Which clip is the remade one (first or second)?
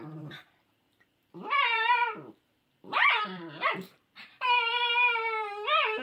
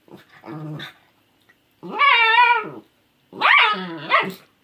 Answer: first